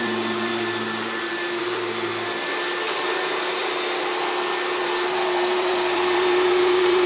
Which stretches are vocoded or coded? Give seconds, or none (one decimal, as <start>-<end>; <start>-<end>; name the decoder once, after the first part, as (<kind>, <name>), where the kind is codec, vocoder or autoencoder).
0.0-0.5 (vocoder, BigVGAN v2); 1.6-2.1; 3.0-3.6; 4.8-7.1